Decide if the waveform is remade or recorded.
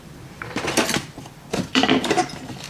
remade